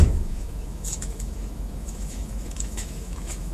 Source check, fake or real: fake